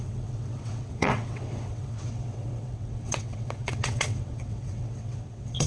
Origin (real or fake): fake